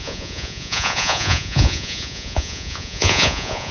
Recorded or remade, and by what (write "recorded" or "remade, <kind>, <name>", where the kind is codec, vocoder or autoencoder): remade, vocoder, Vocos